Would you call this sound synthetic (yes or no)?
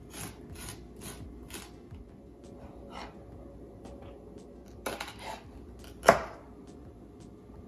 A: no